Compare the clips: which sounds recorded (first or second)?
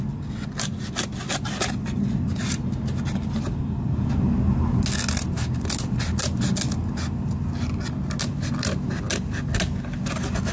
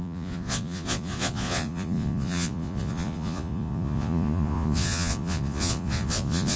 first